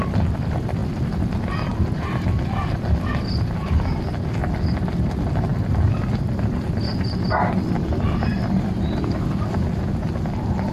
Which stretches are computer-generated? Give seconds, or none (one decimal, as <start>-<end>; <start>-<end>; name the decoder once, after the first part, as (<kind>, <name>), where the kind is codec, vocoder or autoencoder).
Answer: 0.8-2.1 (vocoder, BigVGAN v2); 3.1-3.9; 5.5-9.4